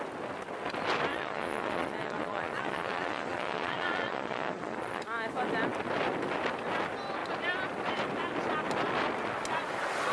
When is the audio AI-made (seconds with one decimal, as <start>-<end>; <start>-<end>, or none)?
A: 1.1-5.0